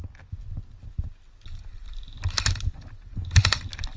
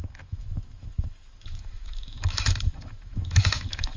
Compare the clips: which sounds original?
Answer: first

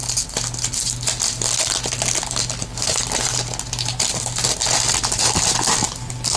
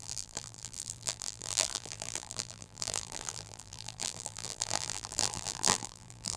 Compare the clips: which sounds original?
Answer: first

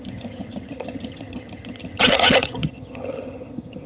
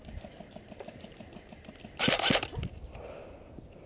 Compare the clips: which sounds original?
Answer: second